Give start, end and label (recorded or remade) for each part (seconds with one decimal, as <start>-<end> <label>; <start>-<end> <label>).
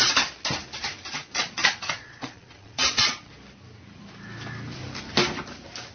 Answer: 0.0-1.2 recorded; 1.2-3.3 remade; 3.3-5.9 recorded